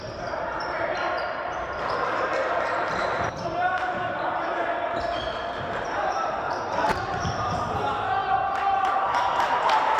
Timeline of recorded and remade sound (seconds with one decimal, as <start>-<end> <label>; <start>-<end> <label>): 0.0-10.0 remade